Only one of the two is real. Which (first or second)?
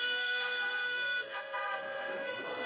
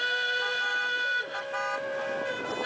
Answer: second